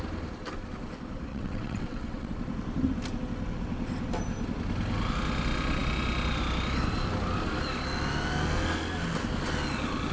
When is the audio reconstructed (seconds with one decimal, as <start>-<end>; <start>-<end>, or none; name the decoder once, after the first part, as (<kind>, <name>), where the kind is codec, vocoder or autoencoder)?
1.3-2.3 (vocoder, WaveNeXt)